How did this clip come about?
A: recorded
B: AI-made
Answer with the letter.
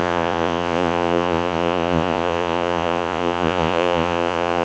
B